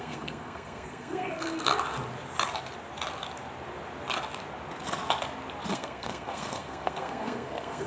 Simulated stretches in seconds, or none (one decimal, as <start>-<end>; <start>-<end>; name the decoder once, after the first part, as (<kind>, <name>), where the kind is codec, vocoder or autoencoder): 0.0-1.7 (codec, SNAC); 5.7-7.9